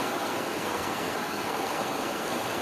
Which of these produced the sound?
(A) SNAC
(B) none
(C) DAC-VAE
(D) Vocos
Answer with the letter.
A